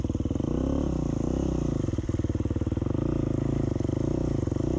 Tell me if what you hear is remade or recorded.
recorded